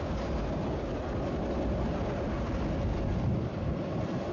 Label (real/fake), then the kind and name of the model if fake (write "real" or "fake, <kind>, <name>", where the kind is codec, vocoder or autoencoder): real